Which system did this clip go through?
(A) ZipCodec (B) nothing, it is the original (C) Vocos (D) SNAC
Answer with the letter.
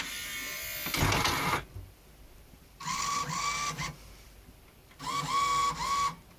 B